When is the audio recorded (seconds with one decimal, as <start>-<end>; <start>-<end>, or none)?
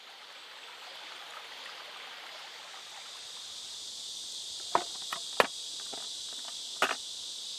0.0-7.6